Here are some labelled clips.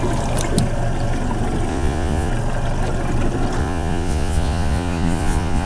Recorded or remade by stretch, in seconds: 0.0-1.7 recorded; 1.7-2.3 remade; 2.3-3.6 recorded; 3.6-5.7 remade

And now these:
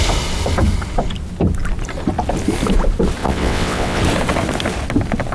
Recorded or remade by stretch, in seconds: 0.0-3.2 recorded; 3.2-4.0 remade; 4.0-5.3 recorded

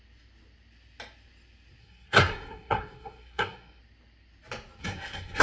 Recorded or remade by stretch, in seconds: 0.0-1.8 recorded; 1.8-3.8 remade; 3.8-4.8 recorded; 4.8-5.4 remade